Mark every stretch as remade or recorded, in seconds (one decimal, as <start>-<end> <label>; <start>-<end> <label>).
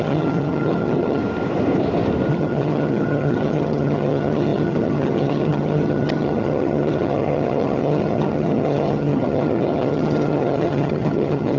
0.0-1.2 remade; 1.2-2.3 recorded; 2.3-11.6 remade